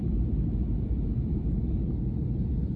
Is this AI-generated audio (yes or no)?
no